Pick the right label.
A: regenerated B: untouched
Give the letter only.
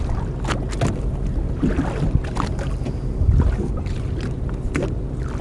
B